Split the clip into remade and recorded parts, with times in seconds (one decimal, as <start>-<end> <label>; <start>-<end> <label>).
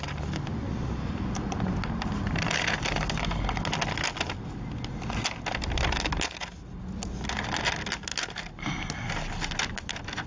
0.0-10.3 recorded